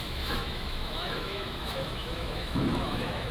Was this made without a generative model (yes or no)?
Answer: no